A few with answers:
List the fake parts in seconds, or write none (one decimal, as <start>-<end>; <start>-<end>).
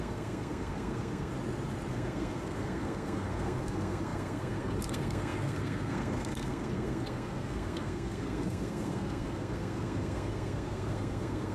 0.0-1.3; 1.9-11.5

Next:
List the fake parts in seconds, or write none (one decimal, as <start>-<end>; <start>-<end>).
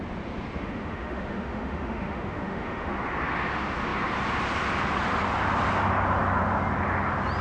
0.6-2.9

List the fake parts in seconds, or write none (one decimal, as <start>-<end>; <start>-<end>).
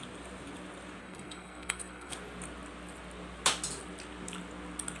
1.0-2.1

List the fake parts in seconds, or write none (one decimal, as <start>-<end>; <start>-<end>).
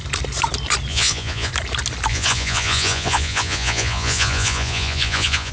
0.9-1.5; 2.1-5.5